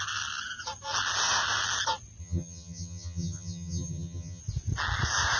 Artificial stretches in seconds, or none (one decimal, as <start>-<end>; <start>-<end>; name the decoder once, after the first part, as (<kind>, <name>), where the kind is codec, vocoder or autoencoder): 2.2-4.4 (vocoder, HiFi-GAN)